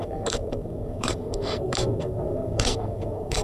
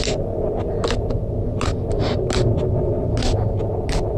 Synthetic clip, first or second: first